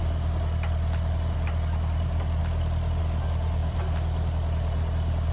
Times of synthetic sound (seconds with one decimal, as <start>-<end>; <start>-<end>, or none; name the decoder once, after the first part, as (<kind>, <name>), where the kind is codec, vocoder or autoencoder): 0.0-2.4 (vocoder, BigVGAN v2); 3.0-5.3